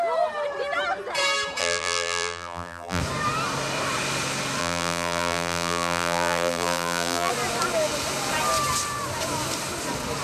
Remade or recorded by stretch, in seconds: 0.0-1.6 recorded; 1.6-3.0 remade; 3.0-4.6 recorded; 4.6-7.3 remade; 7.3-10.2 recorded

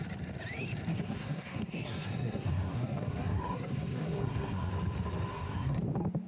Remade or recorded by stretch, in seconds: 0.0-0.9 recorded; 0.9-4.7 remade; 4.7-5.3 recorded; 5.3-5.8 remade; 5.8-6.3 recorded